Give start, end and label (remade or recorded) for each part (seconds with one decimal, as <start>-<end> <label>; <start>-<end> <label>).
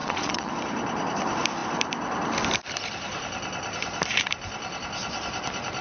0.0-0.5 remade; 0.5-5.8 recorded